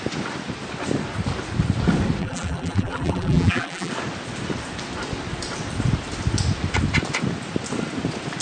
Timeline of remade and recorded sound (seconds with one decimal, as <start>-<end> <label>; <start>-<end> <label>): 0.0-2.2 recorded; 2.2-3.9 remade; 3.9-8.4 recorded